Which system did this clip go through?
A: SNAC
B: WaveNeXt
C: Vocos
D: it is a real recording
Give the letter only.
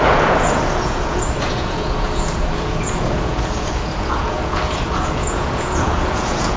C